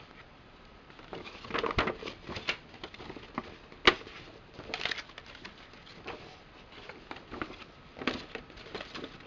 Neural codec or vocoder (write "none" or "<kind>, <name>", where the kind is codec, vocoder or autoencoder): none